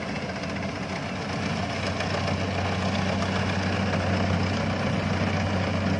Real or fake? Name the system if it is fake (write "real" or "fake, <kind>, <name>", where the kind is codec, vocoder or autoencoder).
real